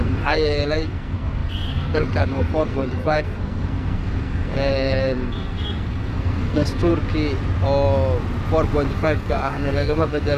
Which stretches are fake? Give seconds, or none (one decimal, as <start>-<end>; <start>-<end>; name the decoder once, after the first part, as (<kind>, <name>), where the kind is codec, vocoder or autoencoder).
0.0-6.9 (codec, SNAC); 8.9-10.4